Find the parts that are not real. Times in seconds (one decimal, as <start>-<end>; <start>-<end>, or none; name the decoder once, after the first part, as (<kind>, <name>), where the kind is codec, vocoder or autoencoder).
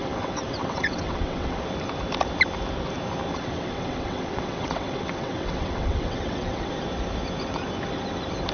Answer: 0.0-1.6 (vocoder, WaveNeXt); 3.3-6.7